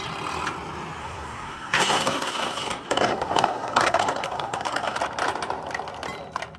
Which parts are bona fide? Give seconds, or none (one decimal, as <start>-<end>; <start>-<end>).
0.0-1.0; 5.0-6.6